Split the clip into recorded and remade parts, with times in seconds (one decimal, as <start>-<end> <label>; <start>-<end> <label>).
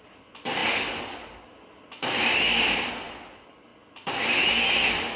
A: 0.0-5.2 recorded